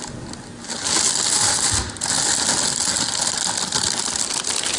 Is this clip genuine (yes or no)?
yes